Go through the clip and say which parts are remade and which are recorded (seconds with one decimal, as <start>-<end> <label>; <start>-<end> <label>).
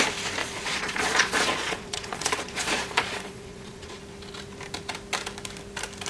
0.0-0.4 recorded; 0.4-4.0 remade; 4.0-6.1 recorded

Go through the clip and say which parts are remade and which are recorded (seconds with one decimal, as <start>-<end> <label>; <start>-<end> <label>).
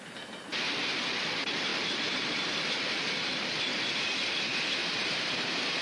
0.0-1.7 recorded; 1.7-2.3 remade; 2.3-4.8 recorded; 4.8-5.8 remade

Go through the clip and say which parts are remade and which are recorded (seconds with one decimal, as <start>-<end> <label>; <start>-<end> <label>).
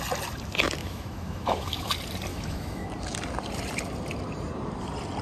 0.0-0.8 recorded; 0.8-1.9 remade; 1.9-2.3 recorded; 2.3-2.9 remade; 2.9-5.2 recorded